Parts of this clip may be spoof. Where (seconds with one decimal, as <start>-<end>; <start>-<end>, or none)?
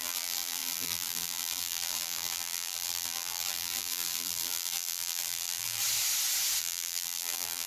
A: 0.0-5.8; 6.6-7.7